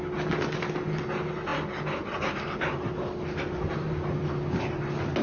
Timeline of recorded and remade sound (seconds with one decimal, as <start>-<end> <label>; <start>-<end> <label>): 0.0-5.2 recorded